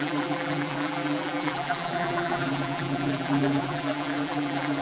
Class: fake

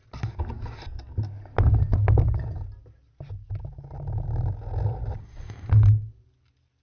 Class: real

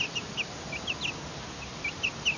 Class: real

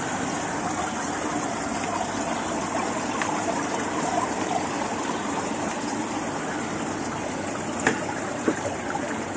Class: real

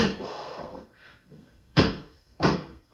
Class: fake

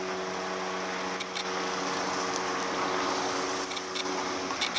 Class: real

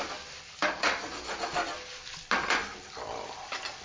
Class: real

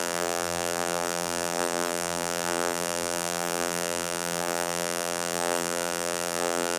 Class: fake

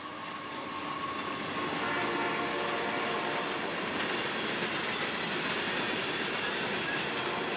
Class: real